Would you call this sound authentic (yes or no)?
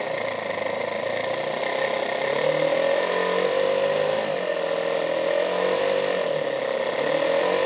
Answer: yes